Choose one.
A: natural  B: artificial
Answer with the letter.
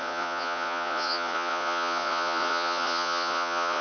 B